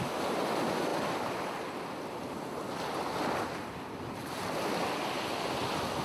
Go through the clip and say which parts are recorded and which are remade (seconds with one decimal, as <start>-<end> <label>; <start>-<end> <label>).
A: 0.0-6.0 recorded